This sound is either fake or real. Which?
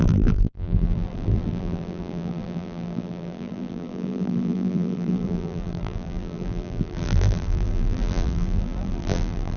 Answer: fake